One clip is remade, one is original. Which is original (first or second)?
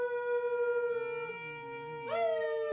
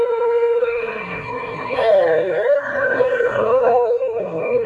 first